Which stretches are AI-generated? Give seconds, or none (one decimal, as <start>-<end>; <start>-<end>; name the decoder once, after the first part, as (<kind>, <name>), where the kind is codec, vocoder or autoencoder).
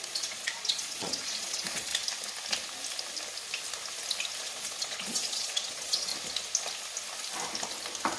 0.0-1.9 (vocoder, Vocos); 4.4-6.1